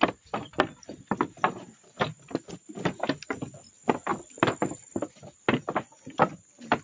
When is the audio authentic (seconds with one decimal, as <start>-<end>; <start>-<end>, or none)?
0.0-6.8

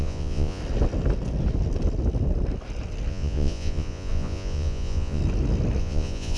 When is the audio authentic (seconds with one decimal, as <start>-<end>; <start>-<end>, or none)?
0.6-3.1; 5.2-5.8

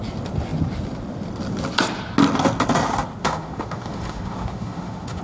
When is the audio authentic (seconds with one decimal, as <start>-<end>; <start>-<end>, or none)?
0.0-3.2

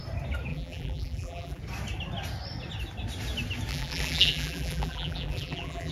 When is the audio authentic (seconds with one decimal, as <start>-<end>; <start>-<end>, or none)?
0.0-0.5; 1.6-3.7

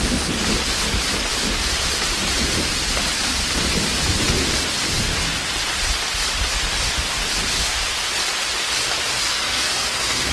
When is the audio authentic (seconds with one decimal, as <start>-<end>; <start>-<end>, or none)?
0.0-9.3